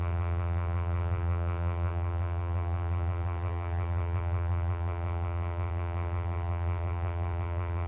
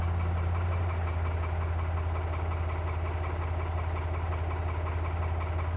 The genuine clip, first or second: second